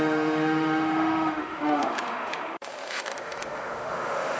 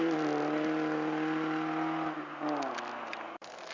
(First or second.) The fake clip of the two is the first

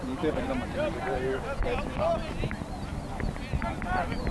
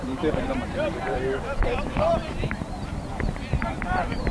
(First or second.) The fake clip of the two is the second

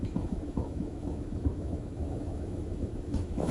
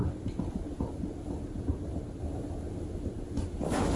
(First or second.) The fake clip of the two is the first